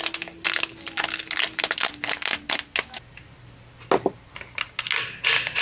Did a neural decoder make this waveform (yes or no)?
no